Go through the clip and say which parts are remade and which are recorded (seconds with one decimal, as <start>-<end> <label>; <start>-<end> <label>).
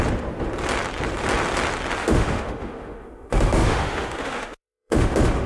0.0-2.0 recorded; 2.0-5.5 remade